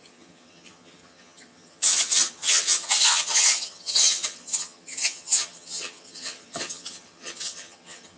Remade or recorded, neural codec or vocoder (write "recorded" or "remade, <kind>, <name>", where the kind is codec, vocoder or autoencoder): remade, vocoder, HiFi-GAN